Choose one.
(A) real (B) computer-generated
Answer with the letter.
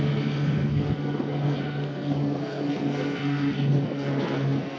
B